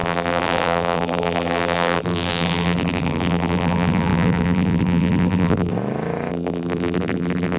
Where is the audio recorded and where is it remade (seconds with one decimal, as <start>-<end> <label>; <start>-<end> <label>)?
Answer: 0.0-5.7 remade; 5.7-6.3 recorded; 6.3-7.6 remade